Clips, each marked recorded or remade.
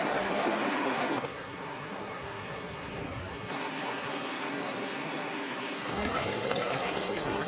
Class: remade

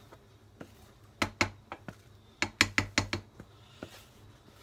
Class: recorded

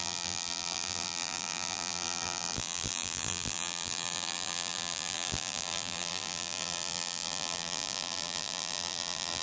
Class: remade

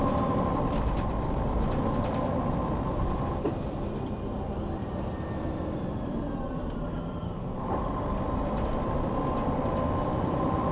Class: remade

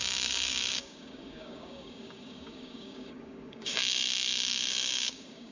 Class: remade